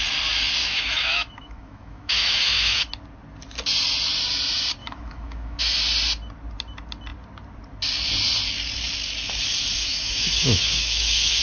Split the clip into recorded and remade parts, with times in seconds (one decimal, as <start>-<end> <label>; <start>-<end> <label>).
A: 0.0-0.6 recorded; 0.6-2.9 remade; 2.9-4.8 recorded; 4.8-5.6 remade; 5.6-9.8 recorded; 9.8-11.4 remade